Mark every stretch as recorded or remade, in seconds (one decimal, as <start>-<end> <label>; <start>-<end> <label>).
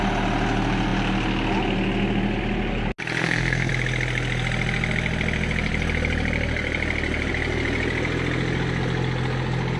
0.0-3.2 recorded; 3.2-3.7 remade; 3.7-9.8 recorded